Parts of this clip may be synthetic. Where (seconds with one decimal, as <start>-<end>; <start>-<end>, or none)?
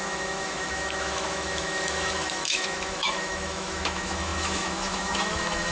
0.0-5.7